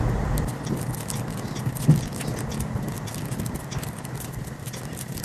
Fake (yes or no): no